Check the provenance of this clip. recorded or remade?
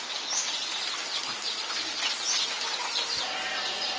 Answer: recorded